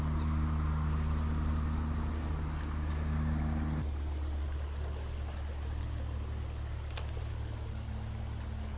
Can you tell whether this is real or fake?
real